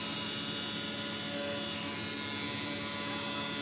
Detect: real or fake real